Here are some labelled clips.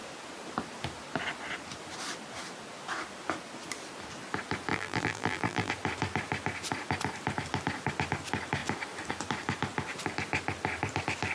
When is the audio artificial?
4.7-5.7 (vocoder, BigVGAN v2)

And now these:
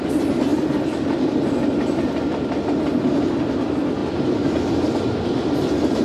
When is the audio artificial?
none

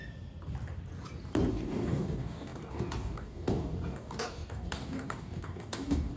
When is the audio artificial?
1.5-6.2 (codec, DAC)

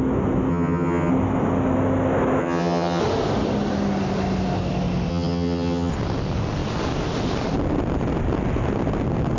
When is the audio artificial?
0.5-1.1 (vocoder, HiFi-GAN); 2.4-3.0; 5.1-5.9